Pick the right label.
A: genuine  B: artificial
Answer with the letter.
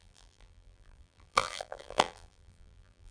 B